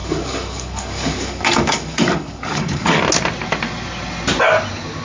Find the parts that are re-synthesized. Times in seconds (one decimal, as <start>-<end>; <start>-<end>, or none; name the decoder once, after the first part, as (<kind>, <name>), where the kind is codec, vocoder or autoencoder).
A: 0.0-3.0 (codec, DAC)